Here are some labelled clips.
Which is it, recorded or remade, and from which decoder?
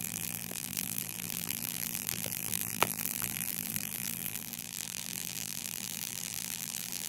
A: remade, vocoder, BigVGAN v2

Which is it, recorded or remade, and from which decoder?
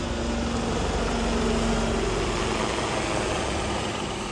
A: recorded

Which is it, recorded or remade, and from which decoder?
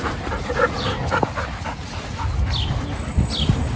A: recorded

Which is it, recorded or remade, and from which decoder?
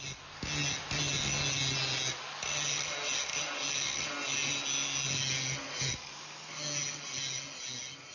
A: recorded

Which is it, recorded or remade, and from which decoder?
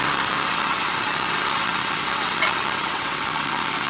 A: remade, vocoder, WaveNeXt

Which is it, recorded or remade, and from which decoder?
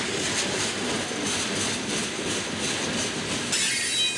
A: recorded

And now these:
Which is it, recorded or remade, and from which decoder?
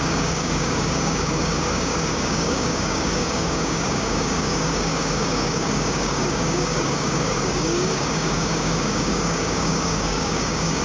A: remade, codec, DAC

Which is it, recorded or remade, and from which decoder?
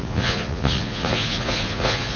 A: remade, vocoder, Vocos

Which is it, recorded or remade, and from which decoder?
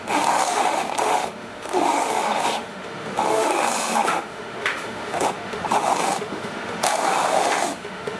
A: remade, autoencoder, DAC-VAE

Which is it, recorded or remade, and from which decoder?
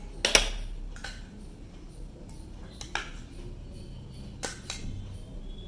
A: recorded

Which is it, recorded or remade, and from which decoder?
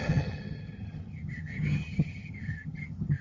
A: remade, vocoder, HiFi-GAN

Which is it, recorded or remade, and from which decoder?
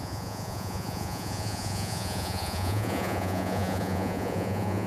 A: remade, vocoder, Vocos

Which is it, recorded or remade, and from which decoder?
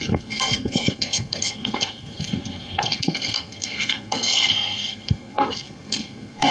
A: remade, codec, SNAC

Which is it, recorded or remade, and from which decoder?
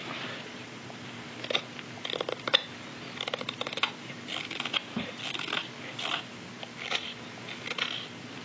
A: recorded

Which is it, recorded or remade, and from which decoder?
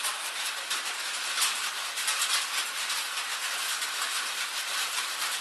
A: recorded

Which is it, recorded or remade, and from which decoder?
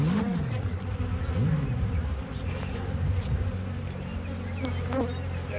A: recorded